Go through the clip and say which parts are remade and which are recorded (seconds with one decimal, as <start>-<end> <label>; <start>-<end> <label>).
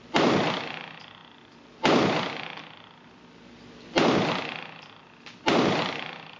0.0-6.4 recorded